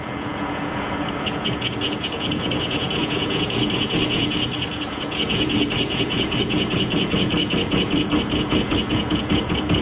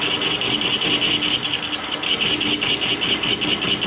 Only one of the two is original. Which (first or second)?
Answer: second